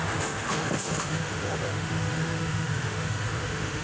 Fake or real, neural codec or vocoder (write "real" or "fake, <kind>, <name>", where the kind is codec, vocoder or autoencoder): fake, autoencoder, DAC-VAE